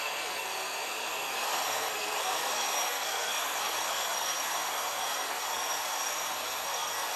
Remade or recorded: remade